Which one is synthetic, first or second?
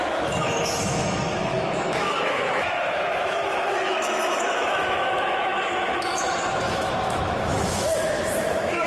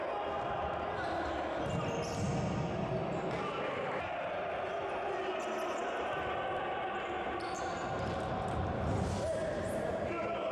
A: first